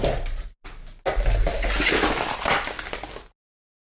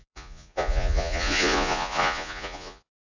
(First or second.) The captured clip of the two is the first